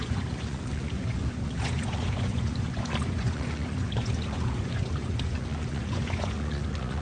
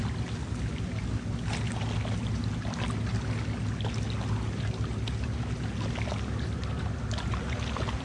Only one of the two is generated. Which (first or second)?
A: first